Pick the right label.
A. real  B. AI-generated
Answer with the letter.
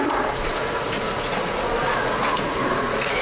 B